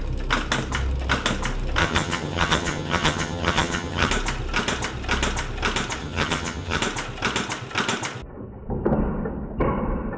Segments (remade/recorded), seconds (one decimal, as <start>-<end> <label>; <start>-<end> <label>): 0.0-1.8 recorded; 1.8-4.1 remade; 4.1-6.0 recorded; 6.0-6.8 remade; 6.8-10.2 recorded